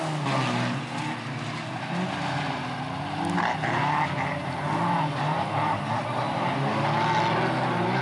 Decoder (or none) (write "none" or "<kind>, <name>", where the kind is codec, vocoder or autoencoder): none